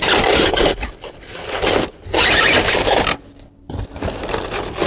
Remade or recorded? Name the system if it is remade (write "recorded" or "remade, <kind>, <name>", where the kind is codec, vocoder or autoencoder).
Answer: recorded